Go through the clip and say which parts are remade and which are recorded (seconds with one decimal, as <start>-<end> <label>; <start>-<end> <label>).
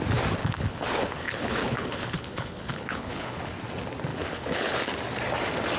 0.0-0.4 recorded; 0.4-3.5 remade; 3.5-4.1 recorded; 4.1-4.8 remade; 4.8-5.8 recorded